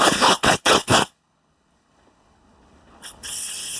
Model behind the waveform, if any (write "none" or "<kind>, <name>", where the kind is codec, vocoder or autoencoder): codec, HILCodec